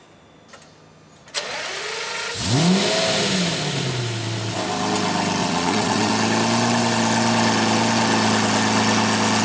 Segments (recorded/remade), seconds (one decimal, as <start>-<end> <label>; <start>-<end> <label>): 0.0-1.2 recorded; 1.2-1.8 remade; 1.8-5.4 recorded; 5.4-6.1 remade; 6.1-9.4 recorded